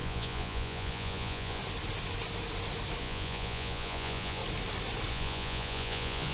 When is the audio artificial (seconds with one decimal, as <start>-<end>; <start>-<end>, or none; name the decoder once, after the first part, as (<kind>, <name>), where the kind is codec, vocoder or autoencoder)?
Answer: 0.0-1.6 (vocoder, Vocos); 3.0-4.4; 5.1-6.3